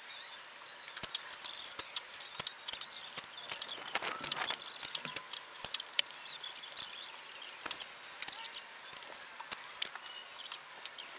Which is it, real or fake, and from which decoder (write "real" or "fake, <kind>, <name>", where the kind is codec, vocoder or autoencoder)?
real